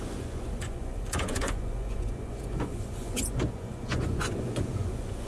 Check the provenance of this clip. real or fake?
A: fake